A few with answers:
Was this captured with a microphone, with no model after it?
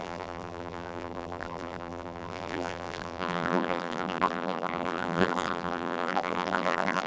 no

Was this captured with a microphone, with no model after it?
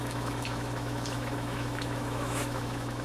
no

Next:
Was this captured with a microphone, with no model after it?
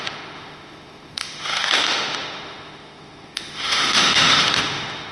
no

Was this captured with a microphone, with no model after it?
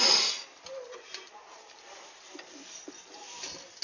yes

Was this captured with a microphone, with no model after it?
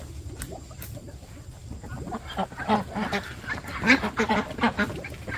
yes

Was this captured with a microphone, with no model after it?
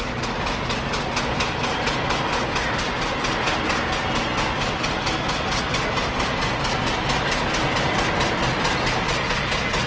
yes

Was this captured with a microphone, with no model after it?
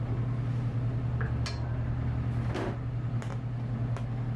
yes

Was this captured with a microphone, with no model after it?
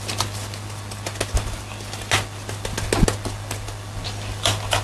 yes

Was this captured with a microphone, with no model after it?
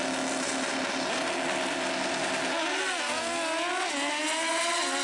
yes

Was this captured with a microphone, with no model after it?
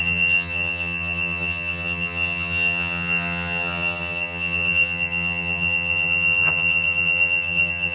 no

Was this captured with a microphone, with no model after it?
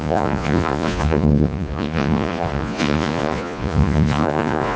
no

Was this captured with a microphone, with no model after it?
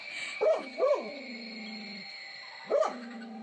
no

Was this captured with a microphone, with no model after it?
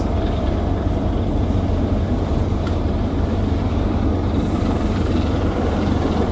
no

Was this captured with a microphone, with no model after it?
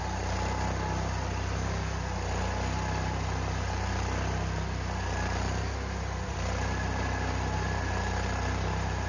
yes